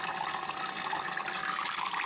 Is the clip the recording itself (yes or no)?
yes